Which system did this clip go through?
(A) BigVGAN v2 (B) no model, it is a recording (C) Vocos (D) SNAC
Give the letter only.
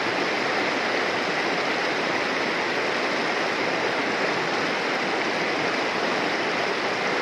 B